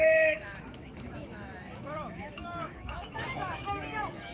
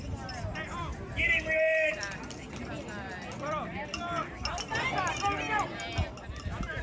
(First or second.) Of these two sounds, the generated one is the first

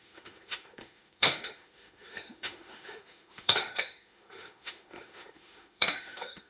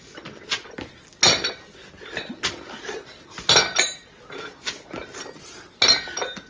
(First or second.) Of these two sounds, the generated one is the first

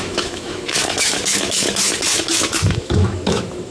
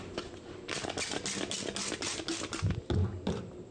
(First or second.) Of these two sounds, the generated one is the first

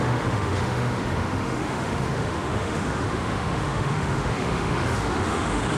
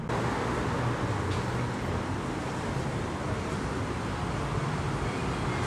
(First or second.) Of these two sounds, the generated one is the first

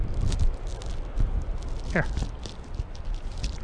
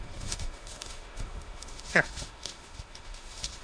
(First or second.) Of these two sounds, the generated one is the second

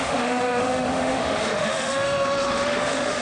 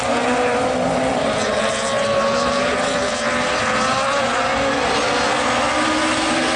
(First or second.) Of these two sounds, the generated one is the first